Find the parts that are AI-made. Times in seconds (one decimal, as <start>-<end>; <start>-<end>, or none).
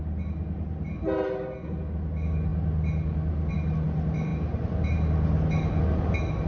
none